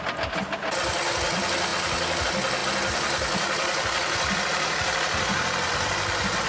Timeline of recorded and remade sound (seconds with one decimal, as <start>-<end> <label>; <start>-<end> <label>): 0.0-6.5 recorded